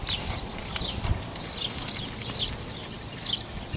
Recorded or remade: recorded